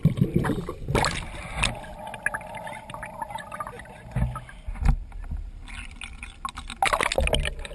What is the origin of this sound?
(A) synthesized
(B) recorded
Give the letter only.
B